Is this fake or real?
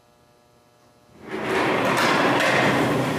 real